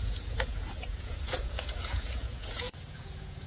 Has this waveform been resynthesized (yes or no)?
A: yes